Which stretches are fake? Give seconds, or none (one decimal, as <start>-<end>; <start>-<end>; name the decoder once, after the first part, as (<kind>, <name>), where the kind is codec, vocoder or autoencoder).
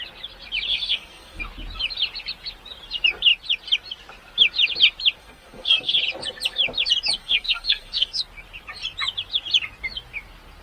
0.7-1.4 (codec, SNAC); 5.2-6.0; 7.2-8.2